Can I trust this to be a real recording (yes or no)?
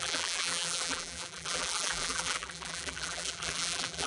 no